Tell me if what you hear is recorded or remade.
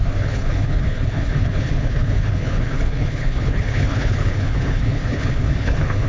remade